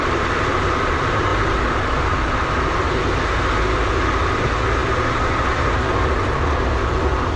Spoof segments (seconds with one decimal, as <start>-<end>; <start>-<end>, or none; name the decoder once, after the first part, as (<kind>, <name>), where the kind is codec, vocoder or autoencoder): none